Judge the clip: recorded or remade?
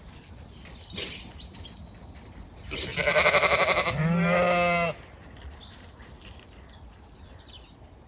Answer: recorded